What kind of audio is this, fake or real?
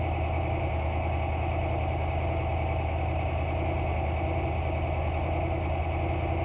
real